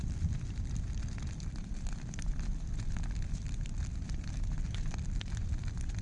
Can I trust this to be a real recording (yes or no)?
no